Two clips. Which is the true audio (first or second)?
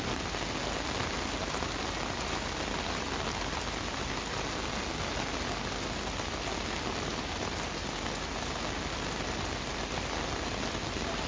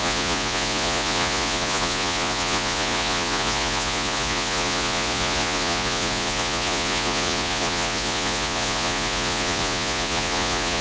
first